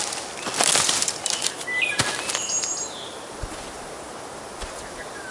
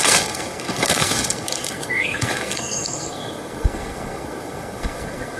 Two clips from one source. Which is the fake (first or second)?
second